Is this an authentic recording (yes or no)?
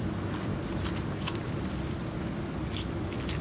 yes